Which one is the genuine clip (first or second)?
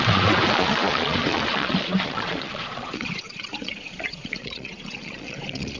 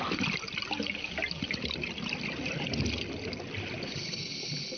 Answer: second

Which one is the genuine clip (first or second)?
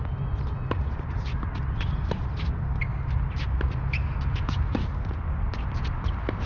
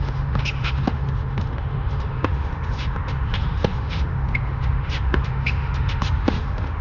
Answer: first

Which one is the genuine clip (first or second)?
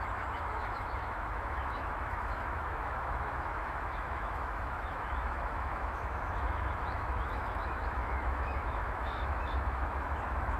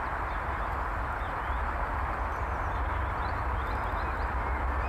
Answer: second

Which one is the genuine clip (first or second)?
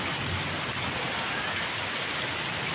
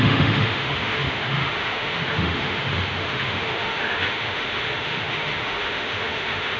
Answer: first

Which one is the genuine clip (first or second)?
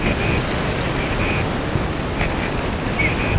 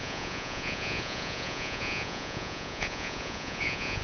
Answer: first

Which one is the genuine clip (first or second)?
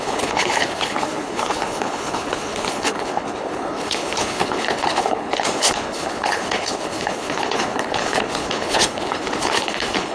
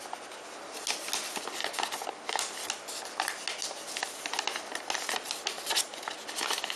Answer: second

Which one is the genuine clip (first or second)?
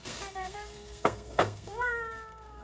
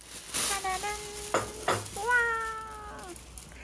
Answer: second